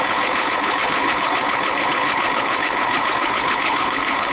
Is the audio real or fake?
fake